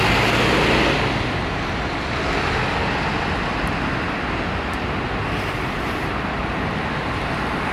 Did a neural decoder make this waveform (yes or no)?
no